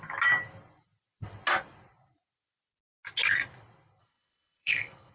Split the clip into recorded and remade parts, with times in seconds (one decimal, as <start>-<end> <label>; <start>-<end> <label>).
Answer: 0.0-4.0 recorded; 4.0-5.1 remade